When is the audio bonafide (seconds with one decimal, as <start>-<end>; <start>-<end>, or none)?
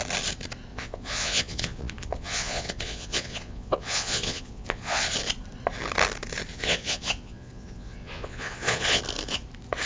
0.0-0.7; 5.0-6.5; 9.0-9.9